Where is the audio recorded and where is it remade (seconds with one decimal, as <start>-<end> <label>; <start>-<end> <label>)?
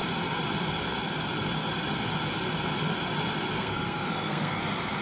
0.0-3.6 recorded; 3.6-4.6 remade; 4.6-5.0 recorded